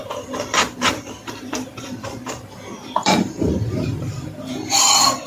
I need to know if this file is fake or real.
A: fake